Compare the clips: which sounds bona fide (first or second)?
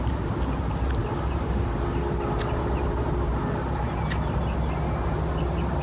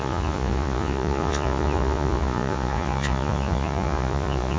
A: first